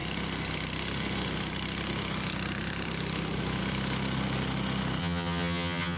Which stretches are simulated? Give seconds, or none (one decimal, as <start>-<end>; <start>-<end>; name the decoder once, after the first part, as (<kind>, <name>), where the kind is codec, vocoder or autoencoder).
5.0-6.0 (vocoder, HiFi-GAN)